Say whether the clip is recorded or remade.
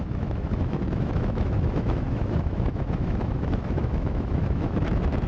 remade